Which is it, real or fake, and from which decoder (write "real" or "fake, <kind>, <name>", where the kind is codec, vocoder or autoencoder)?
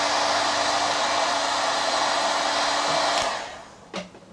real